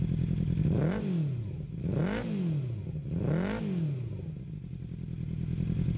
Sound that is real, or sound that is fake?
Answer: real